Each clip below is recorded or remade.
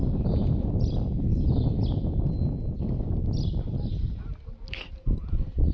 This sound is recorded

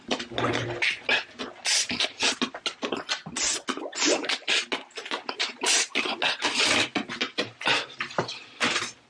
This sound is recorded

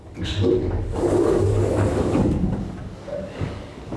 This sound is remade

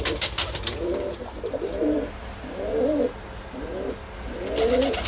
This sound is recorded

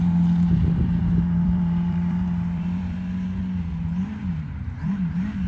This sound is remade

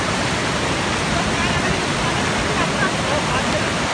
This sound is recorded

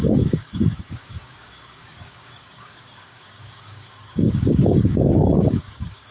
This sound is remade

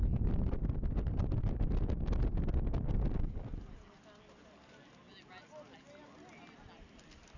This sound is recorded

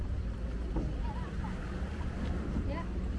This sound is recorded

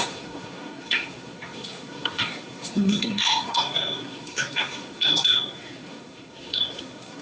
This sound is remade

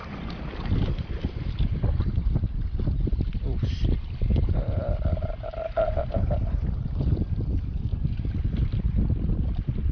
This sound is remade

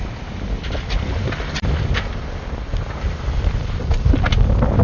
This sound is recorded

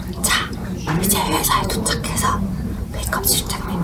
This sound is remade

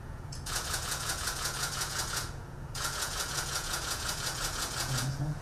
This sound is remade